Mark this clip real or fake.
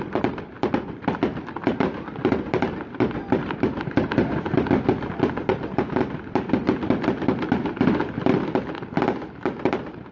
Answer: real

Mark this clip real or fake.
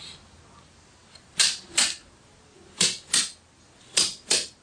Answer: real